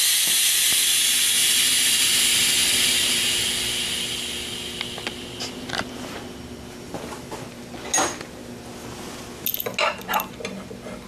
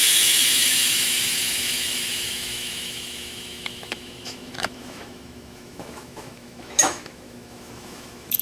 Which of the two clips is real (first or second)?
first